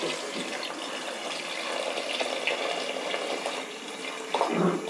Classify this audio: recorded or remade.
recorded